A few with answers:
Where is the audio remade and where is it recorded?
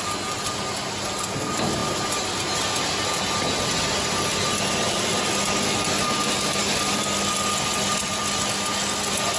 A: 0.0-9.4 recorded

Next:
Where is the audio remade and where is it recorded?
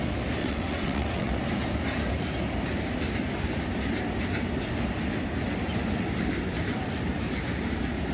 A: 0.0-0.4 recorded; 0.4-1.4 remade; 1.4-8.1 recorded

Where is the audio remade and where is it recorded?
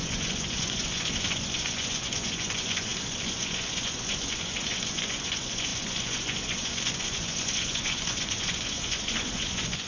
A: 0.0-9.9 remade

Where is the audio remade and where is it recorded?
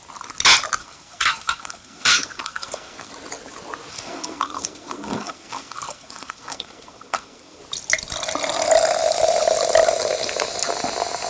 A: 0.0-0.8 recorded; 0.8-3.1 remade; 3.1-3.9 recorded; 3.9-7.6 remade; 7.6-11.3 recorded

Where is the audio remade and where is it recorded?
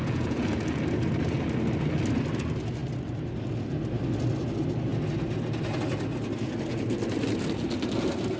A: 0.0-0.8 remade; 0.8-8.4 recorded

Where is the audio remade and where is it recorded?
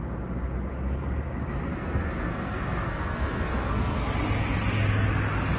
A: 0.0-1.7 recorded; 1.7-4.0 remade; 4.0-5.6 recorded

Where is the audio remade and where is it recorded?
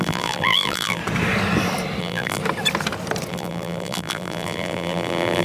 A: 0.0-1.0 remade; 1.0-2.0 recorded; 2.0-2.4 remade; 2.4-3.3 recorded; 3.3-5.4 remade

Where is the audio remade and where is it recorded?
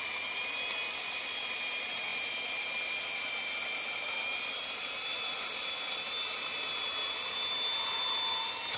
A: 0.0-8.8 recorded